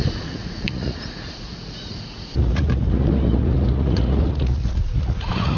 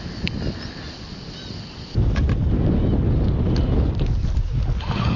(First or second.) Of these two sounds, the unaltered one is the second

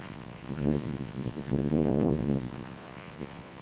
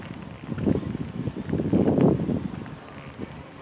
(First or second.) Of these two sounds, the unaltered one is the second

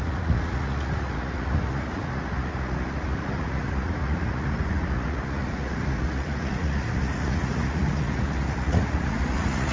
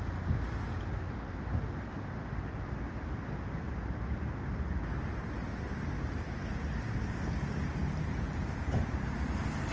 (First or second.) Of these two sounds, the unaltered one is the second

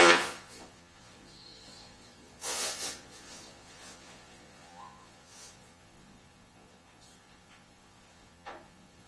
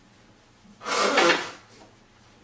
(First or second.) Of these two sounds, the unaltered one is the second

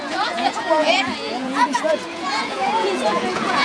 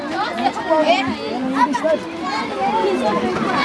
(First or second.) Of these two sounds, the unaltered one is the second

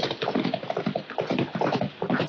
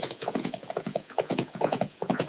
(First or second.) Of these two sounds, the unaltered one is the first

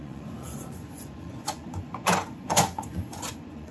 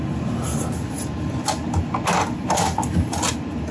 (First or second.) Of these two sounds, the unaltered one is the second